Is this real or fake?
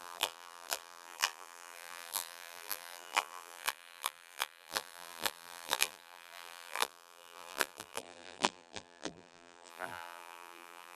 fake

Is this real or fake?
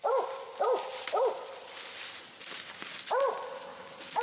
real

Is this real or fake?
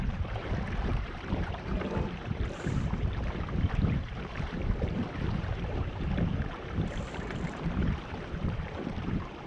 fake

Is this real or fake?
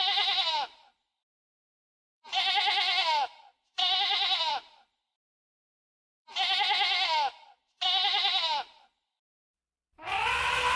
fake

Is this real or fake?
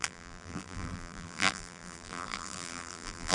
fake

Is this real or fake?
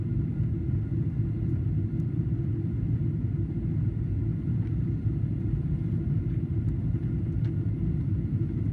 real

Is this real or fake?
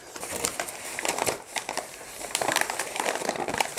fake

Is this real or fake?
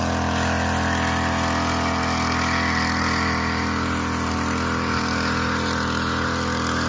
real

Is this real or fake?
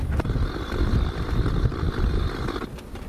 real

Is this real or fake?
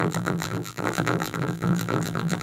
fake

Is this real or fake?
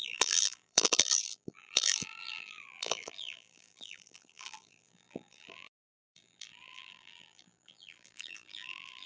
fake